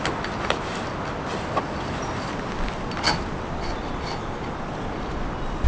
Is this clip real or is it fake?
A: real